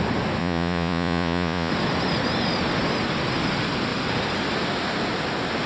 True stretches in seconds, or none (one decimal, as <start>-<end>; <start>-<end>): 0.0-0.4; 1.7-5.7